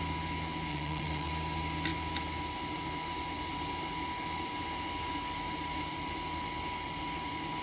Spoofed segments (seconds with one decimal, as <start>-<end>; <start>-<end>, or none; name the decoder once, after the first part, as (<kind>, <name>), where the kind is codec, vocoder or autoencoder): 0.7-1.3 (vocoder, WaveNeXt)